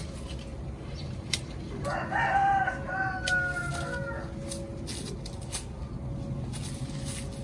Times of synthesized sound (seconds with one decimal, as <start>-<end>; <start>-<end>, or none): 0.5-2.6